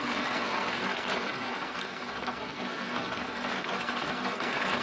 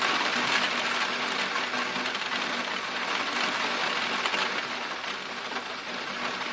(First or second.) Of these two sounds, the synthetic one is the first